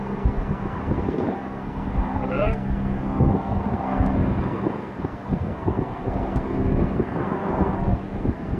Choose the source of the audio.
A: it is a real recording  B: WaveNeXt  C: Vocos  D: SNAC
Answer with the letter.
D